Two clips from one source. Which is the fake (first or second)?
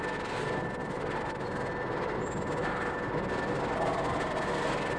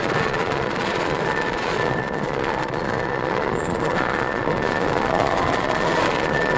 second